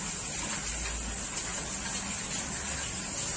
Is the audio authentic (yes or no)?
yes